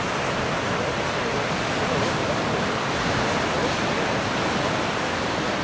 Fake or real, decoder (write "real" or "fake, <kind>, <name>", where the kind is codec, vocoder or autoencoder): real